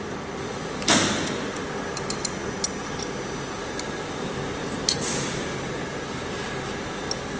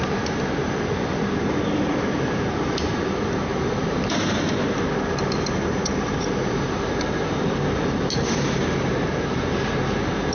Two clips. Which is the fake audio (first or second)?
second